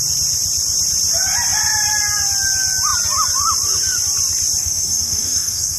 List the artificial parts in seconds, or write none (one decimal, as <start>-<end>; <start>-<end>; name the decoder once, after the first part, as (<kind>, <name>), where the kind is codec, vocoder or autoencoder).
4.6-5.8 (codec, DAC)